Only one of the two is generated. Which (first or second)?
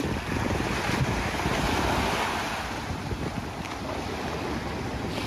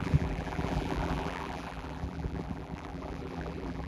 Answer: second